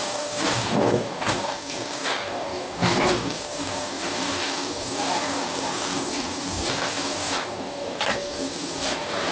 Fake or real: fake